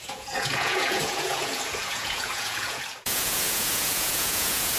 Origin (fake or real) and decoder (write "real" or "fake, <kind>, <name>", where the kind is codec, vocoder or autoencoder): fake, vocoder, Vocos